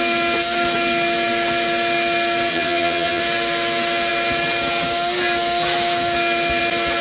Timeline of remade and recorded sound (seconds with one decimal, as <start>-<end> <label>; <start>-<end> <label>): 0.0-2.5 recorded; 2.5-3.2 remade; 3.2-7.0 recorded